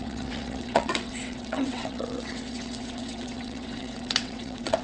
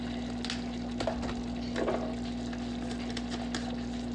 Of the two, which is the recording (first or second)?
second